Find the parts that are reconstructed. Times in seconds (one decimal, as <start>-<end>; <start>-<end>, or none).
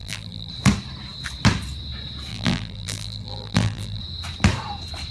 0.0-0.5; 2.3-4.0